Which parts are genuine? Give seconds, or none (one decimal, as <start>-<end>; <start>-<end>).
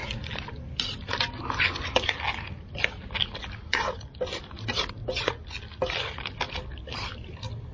0.0-2.5; 5.0-6.5